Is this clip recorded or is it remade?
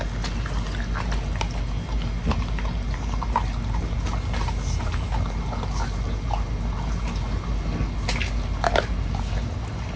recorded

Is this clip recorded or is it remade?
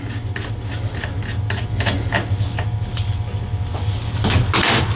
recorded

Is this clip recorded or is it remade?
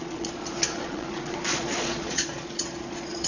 remade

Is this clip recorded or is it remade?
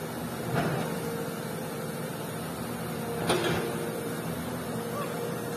recorded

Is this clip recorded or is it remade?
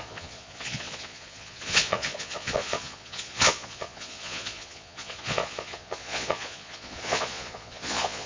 remade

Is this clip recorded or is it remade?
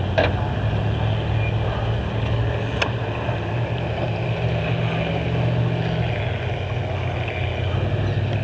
recorded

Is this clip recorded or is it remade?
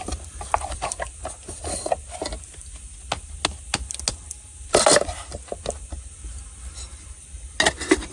recorded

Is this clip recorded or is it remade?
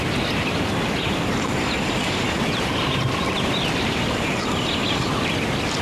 recorded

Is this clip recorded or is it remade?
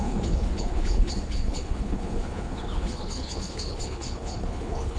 remade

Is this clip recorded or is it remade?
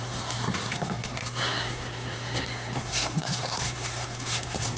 remade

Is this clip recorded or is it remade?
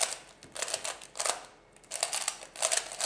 recorded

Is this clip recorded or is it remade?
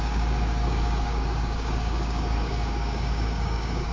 remade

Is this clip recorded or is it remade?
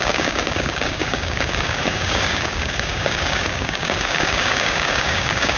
remade